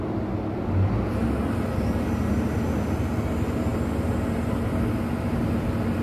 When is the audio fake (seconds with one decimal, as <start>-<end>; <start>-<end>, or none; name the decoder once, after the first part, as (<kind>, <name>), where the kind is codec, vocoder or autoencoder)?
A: none